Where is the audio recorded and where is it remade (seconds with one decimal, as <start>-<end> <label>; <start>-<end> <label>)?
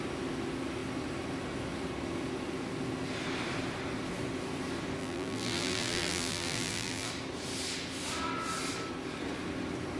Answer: 0.0-5.0 recorded; 5.0-7.1 remade; 7.1-10.0 recorded